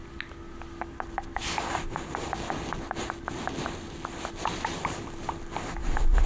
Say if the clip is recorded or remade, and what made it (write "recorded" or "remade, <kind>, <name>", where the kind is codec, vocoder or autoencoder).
recorded